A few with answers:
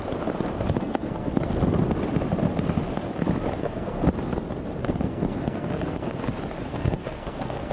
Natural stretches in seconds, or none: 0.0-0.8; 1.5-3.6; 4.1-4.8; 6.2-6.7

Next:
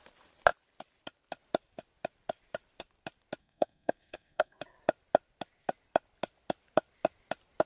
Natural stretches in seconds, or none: 0.0-3.4; 4.6-7.7

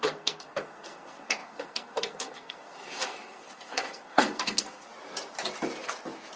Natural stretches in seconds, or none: 4.9-6.4

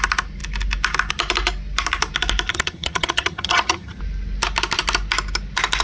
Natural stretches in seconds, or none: 0.0-2.5; 4.0-5.8

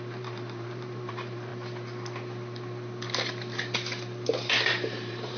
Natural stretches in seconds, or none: 1.5-4.7

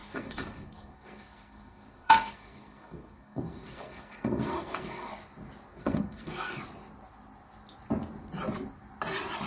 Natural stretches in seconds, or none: 5.1-5.7; 6.6-9.5

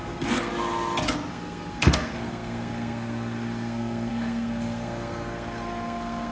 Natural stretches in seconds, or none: 0.5-1.3